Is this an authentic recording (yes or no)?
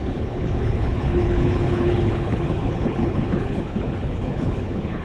no